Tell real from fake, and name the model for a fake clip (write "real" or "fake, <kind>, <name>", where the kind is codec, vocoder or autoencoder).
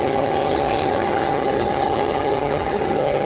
fake, vocoder, HiFi-GAN